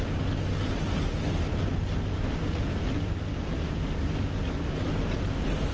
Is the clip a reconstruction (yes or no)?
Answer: no